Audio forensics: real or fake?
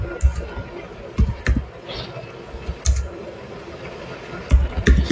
real